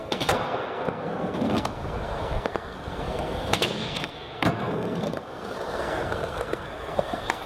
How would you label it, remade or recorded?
remade